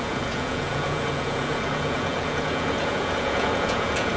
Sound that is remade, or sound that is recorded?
remade